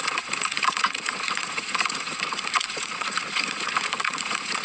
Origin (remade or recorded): remade